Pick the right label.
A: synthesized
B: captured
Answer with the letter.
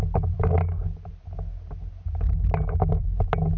B